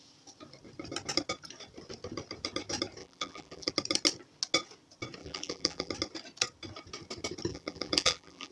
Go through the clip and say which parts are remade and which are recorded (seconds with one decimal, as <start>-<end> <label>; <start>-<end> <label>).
0.0-3.0 recorded; 3.0-3.7 remade; 3.7-5.2 recorded; 5.2-5.9 remade; 5.9-7.5 recorded; 7.5-8.5 remade